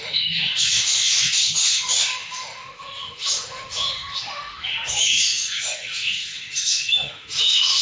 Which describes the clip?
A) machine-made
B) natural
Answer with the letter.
A